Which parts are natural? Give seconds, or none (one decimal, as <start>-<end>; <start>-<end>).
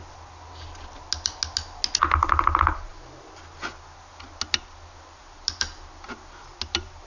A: 0.0-7.1